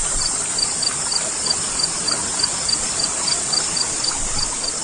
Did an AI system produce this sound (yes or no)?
no